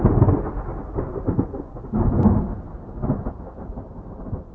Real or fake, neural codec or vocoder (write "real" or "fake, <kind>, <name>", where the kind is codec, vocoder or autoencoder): real